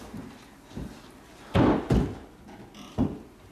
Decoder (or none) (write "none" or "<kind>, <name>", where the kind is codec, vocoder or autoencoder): none